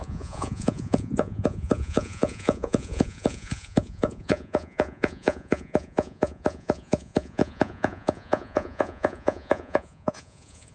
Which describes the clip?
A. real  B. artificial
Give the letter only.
B